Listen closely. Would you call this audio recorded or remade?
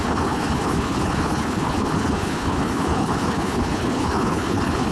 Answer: remade